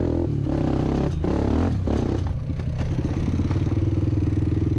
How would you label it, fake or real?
real